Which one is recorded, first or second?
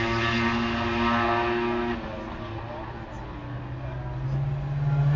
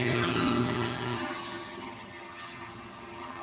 first